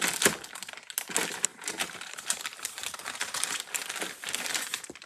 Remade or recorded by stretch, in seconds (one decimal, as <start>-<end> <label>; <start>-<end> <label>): 0.0-1.5 recorded; 1.5-3.6 remade; 3.6-5.1 recorded